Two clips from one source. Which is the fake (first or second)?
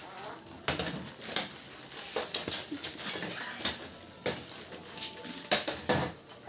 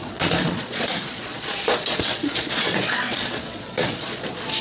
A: second